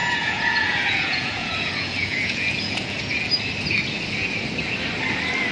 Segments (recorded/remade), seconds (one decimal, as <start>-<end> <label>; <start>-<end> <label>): 0.0-3.3 remade; 3.3-5.5 recorded